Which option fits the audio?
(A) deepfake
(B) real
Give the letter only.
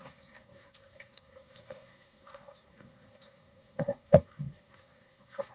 A